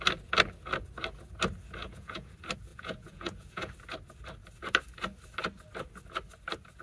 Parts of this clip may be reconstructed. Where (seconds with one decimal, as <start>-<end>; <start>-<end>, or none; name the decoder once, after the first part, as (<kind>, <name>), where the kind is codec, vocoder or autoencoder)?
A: 1.8-2.3 (vocoder, Vocos); 2.7-3.7